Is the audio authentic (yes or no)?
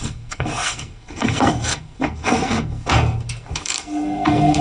no